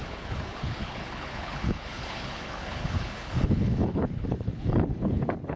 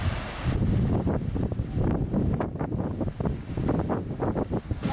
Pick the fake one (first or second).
first